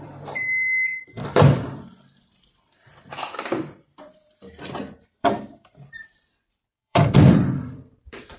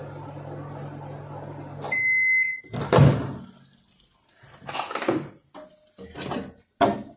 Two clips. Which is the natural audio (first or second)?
second